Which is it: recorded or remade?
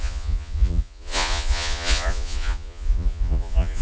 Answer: remade